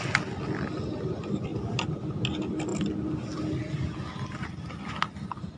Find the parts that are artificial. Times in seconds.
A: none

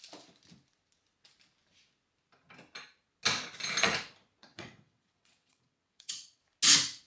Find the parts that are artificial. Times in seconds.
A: 4.4-6.4 (vocoder, WaveNeXt)